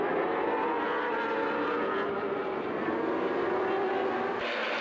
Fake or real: real